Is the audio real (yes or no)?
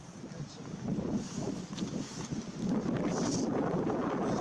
yes